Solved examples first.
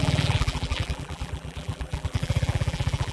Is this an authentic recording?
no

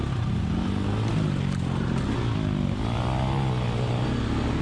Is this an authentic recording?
yes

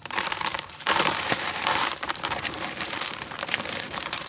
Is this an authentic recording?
no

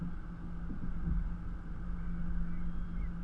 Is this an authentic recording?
yes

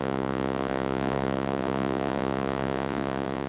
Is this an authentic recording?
no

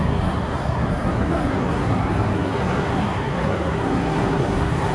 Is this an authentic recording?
no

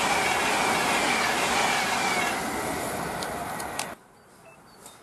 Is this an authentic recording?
yes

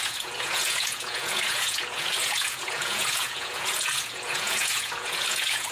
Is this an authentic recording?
no